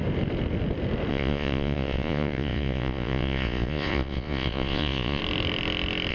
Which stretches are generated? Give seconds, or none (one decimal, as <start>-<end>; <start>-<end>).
1.1-5.2